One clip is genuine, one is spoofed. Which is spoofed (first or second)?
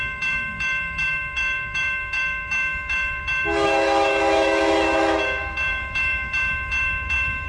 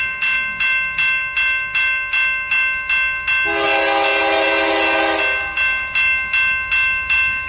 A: first